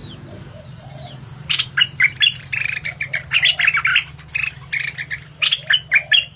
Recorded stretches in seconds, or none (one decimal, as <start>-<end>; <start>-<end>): 3.3-6.4